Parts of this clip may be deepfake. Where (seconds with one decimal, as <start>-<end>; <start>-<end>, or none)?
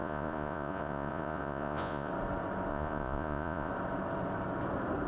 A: 0.0-2.1; 2.7-3.7